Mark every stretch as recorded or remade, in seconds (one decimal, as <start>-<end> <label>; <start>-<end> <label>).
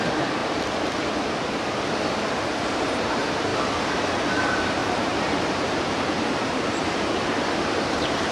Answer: 0.0-0.4 remade; 0.4-2.0 recorded; 2.0-3.5 remade; 3.5-4.3 recorded; 4.3-8.3 remade